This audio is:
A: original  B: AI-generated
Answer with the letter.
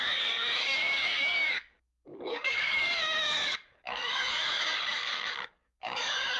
B